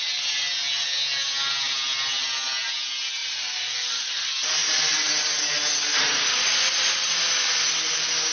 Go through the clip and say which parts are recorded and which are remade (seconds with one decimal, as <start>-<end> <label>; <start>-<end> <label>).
0.0-3.2 recorded; 3.2-4.1 remade; 4.1-4.6 recorded; 4.6-5.1 remade; 5.1-8.3 recorded